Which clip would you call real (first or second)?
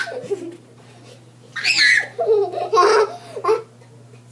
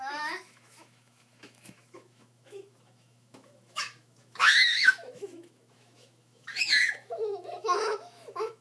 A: first